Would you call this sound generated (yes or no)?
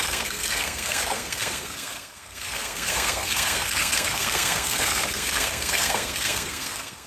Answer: yes